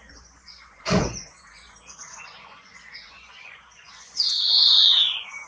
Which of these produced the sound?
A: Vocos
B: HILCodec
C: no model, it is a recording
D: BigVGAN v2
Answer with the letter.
A